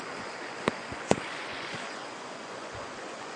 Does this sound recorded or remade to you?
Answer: remade